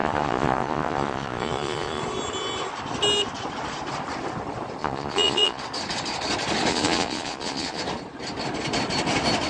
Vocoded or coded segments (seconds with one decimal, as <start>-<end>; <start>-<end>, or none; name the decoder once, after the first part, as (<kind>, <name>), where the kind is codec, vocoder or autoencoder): 0.0-2.0 (vocoder, Vocos); 4.8-5.6; 6.7-7.8